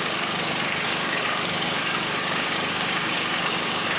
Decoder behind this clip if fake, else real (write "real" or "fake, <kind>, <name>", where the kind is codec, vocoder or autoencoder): fake, codec, DAC